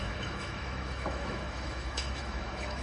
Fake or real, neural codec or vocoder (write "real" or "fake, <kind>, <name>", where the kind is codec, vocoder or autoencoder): fake, autoencoder, DAC-VAE